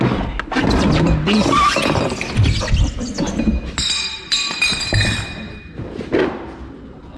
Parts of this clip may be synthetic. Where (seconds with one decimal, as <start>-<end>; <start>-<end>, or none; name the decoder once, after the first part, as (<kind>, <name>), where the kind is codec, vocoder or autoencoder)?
none

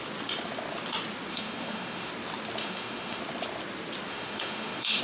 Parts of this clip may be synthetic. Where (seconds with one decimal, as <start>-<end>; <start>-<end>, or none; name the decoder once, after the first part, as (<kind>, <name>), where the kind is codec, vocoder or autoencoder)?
1.3-2.1 (autoencoder, DAC-VAE); 2.6-3.2; 4.1-5.0

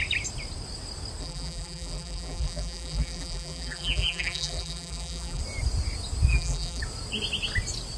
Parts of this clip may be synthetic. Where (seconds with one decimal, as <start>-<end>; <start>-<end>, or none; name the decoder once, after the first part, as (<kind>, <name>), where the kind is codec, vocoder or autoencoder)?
1.2-5.4 (vocoder, BigVGAN v2); 6.3-6.8

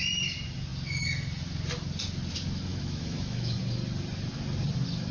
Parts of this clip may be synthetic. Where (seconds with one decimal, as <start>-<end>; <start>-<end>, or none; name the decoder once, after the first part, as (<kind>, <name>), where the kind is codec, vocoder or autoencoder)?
2.7-3.6 (autoencoder, DAC-VAE)

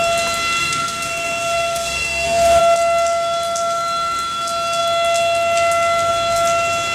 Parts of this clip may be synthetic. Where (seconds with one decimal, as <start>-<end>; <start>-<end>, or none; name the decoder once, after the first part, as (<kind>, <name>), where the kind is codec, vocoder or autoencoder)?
0.6-2.6 (codec, SNAC)